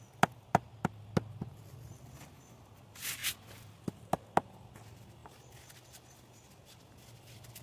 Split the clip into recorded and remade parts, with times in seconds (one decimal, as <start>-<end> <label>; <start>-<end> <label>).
0.0-7.6 recorded